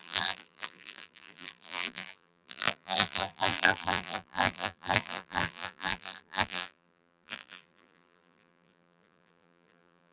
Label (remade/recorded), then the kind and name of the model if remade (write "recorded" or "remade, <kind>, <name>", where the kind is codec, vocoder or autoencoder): remade, vocoder, BigVGAN v2